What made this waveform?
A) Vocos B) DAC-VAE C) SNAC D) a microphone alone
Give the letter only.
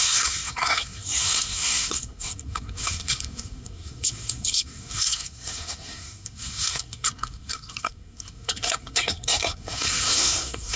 C